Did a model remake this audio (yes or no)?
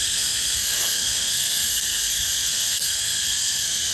yes